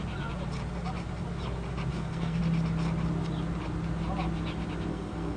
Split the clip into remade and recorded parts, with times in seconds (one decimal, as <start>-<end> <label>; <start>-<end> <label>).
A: 0.0-1.9 recorded; 1.9-2.4 remade; 2.4-4.9 recorded; 4.9-5.4 remade